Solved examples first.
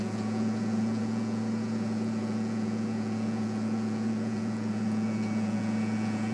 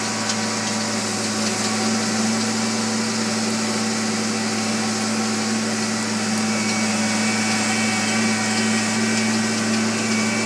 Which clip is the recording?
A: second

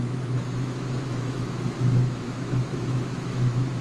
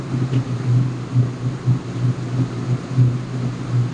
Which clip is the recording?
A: second